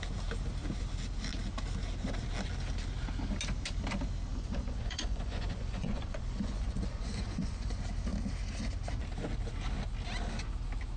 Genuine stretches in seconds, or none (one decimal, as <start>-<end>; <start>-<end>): 0.0-4.3; 7.7-11.0